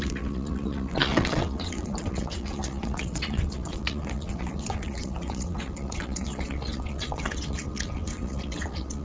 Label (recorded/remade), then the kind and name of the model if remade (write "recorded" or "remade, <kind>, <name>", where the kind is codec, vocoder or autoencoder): remade, vocoder, WaveNeXt